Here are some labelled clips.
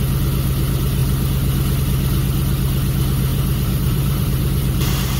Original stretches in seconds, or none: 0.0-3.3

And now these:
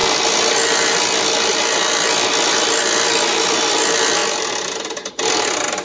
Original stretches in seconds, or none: 0.0-5.8

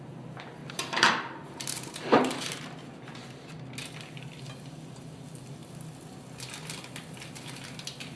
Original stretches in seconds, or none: 0.0-0.6; 2.6-8.2